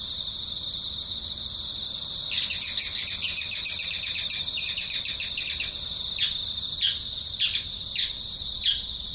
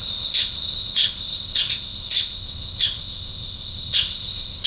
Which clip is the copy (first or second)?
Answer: second